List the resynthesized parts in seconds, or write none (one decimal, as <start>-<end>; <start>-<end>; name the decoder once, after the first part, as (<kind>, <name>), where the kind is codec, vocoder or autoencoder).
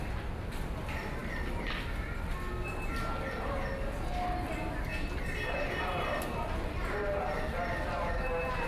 none